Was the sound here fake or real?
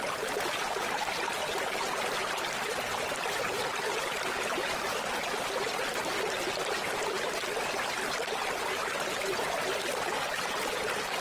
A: real